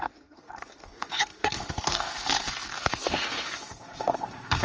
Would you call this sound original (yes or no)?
no